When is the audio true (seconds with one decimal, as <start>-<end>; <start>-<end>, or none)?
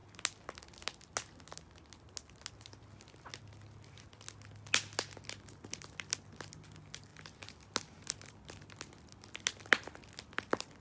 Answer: 0.0-10.8